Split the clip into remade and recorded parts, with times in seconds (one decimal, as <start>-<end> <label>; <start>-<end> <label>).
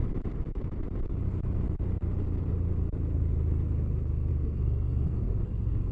0.0-4.3 recorded; 4.3-5.5 remade; 5.5-5.9 recorded